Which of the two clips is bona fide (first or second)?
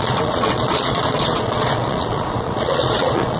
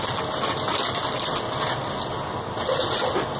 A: second